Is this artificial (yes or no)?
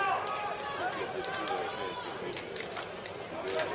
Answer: no